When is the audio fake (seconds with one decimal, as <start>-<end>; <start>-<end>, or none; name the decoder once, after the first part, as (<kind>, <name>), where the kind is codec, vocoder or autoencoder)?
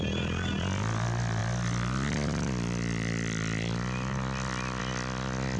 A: none